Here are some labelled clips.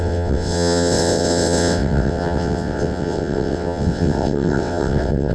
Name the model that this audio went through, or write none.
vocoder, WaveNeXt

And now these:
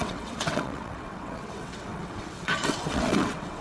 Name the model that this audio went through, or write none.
vocoder, WaveNeXt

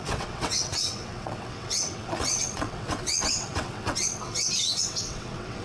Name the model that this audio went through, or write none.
vocoder, WaveNeXt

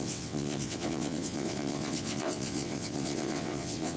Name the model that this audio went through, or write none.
vocoder, WaveNeXt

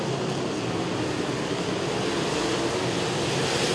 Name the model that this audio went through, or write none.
none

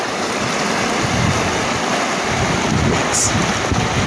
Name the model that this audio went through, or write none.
none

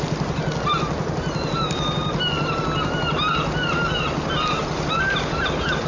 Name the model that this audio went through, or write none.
none